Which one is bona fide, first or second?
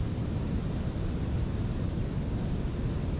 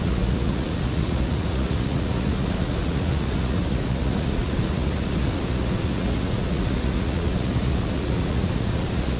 first